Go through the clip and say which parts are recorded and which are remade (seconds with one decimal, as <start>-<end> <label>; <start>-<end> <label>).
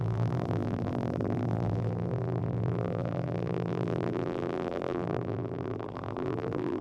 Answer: 0.0-6.8 remade